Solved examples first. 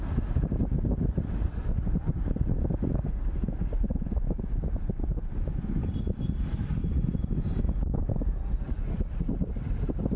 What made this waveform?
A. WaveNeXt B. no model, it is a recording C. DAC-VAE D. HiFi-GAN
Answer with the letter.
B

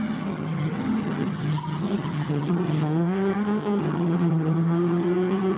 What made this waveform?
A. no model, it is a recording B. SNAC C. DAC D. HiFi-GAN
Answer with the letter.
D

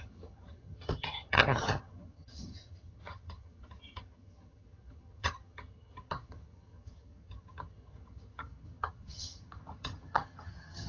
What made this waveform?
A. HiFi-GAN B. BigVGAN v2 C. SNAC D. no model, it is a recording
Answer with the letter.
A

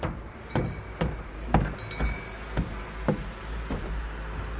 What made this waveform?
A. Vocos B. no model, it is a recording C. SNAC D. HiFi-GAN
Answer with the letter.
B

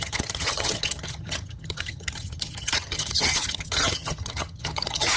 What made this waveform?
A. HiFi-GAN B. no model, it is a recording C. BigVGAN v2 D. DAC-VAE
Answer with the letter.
A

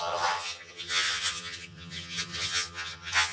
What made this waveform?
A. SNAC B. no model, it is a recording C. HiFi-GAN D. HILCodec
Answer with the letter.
C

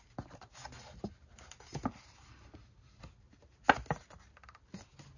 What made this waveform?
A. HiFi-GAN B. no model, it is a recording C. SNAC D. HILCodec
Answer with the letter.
B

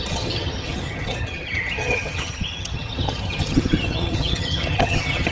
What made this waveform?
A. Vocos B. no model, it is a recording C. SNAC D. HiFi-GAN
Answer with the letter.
D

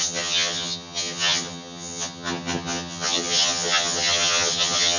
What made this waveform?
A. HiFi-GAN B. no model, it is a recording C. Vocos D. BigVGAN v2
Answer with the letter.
A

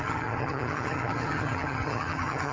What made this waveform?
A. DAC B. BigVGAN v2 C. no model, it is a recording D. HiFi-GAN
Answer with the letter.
D